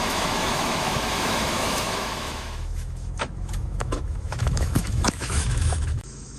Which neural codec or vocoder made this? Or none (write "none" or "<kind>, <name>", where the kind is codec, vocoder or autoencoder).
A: autoencoder, DAC-VAE